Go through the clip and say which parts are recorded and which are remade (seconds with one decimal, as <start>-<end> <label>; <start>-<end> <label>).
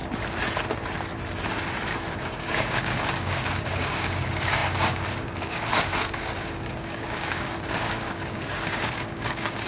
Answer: 0.0-2.2 recorded; 2.2-9.7 remade